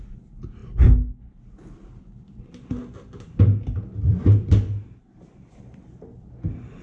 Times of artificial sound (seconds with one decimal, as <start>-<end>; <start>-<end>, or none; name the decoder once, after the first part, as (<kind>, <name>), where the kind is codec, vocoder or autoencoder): none